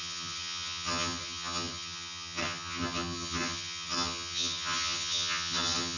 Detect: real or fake fake